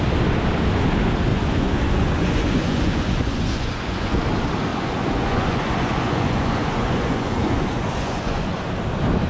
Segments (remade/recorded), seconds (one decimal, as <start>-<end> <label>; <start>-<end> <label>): 0.0-1.3 recorded; 1.3-4.2 remade; 4.2-4.7 recorded; 4.7-8.6 remade; 8.6-9.3 recorded